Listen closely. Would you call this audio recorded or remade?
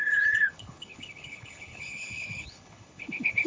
remade